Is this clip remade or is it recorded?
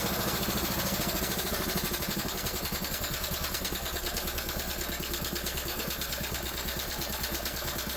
remade